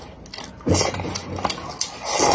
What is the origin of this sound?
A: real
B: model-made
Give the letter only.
A